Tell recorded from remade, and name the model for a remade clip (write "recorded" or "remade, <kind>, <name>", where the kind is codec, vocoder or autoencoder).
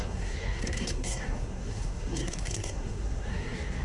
remade, codec, SNAC